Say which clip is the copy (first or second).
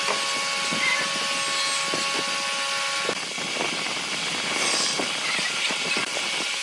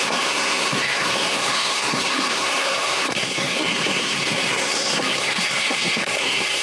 second